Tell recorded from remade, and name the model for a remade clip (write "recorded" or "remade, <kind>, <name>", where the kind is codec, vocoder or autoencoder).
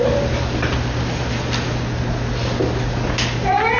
recorded